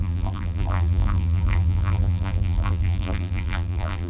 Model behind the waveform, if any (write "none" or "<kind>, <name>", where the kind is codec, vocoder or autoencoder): vocoder, BigVGAN v2